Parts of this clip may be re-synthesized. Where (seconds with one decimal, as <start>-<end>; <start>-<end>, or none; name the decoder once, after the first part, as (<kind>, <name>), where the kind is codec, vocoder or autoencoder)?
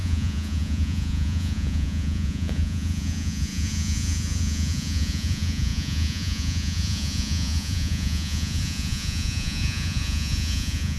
0.0-11.0 (vocoder, Vocos)